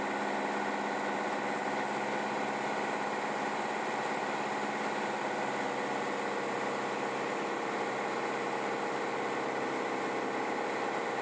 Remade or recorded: recorded